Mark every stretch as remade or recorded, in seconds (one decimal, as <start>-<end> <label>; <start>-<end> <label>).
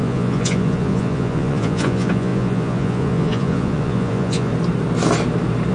0.0-4.5 remade; 4.5-5.7 recorded